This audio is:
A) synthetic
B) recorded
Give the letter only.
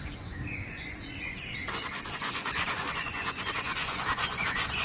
A